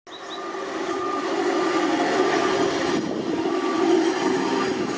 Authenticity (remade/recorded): recorded